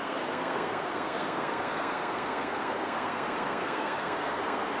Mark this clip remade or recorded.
remade